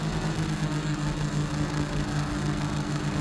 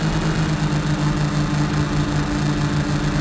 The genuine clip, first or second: second